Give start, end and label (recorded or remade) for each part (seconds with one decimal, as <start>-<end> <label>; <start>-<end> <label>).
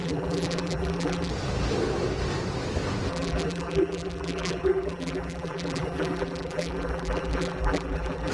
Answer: 0.0-1.3 remade; 1.3-3.1 recorded; 3.1-8.3 remade